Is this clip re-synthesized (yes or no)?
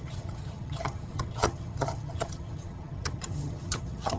yes